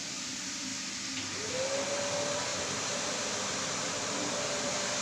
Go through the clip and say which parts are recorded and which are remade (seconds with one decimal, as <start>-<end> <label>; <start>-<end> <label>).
0.0-2.5 recorded; 2.5-5.0 remade